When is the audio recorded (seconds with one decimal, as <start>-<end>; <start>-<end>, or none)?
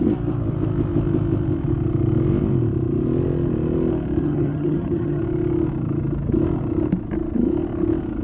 0.0-4.2; 5.2-8.2